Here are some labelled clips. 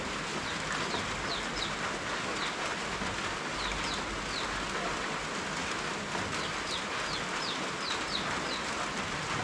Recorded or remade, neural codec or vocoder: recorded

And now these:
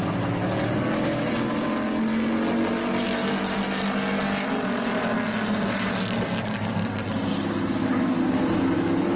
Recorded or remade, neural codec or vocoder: recorded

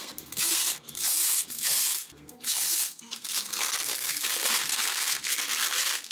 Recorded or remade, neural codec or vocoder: remade, codec, SNAC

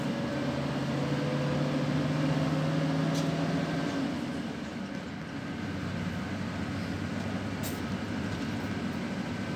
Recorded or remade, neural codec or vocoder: recorded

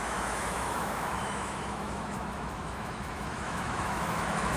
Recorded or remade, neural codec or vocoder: remade, autoencoder, DAC-VAE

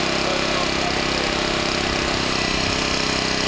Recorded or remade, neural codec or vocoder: recorded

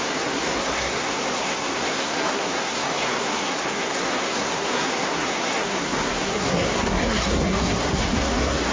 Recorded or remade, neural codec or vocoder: remade, codec, SNAC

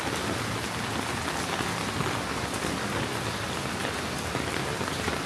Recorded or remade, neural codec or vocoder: recorded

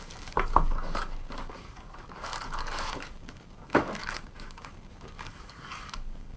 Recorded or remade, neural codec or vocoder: remade, codec, DAC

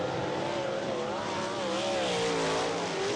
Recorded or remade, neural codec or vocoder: recorded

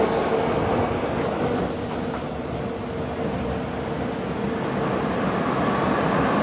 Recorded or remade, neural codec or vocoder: recorded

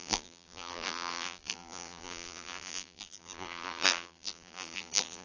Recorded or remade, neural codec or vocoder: remade, vocoder, BigVGAN v2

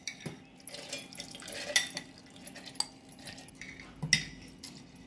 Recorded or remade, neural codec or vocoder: recorded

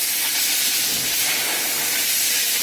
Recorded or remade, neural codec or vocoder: remade, vocoder, BigVGAN v2